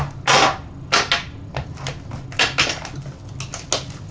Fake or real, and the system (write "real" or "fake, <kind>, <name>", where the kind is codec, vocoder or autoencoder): real